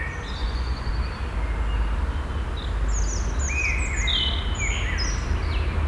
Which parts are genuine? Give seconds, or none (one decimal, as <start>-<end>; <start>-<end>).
0.0-0.4; 0.9-5.9